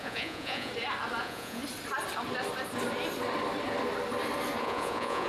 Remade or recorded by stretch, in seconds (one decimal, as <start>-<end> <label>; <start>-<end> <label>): 0.0-0.7 remade; 0.7-1.2 recorded; 1.2-1.6 remade; 1.6-4.6 recorded; 4.6-5.3 remade